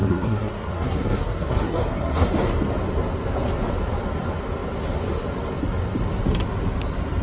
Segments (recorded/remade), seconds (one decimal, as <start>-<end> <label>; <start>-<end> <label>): 0.0-2.3 remade; 2.3-7.2 recorded